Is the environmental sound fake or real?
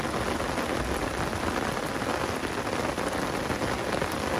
real